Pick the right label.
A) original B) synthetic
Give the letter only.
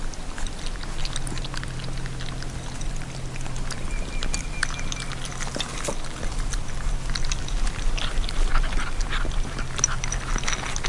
A